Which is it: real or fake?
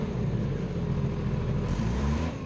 fake